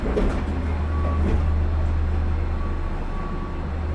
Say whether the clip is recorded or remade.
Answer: recorded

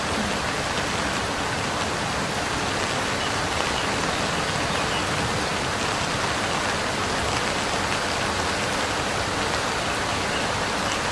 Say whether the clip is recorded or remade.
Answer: recorded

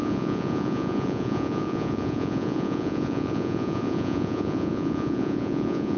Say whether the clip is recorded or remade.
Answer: remade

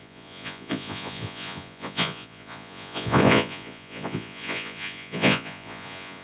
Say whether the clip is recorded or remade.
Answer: remade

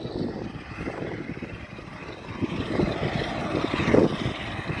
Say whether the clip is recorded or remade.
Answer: recorded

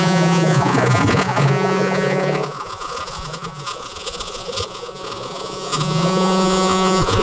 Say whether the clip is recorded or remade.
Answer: remade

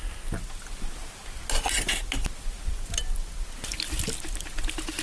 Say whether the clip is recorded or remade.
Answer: recorded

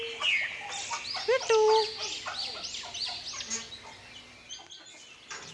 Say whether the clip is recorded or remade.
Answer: recorded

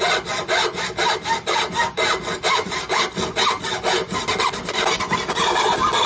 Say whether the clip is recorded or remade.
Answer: recorded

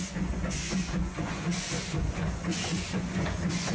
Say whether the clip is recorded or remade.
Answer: remade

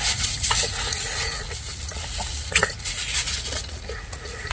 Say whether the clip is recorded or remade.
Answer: remade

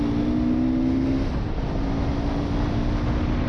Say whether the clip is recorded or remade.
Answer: recorded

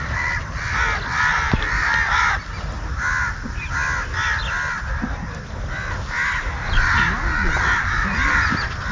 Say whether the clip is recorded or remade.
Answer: recorded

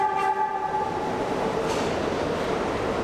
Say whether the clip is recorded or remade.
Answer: recorded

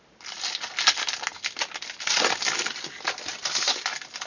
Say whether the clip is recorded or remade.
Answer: recorded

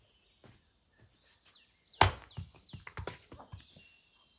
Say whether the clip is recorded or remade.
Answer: recorded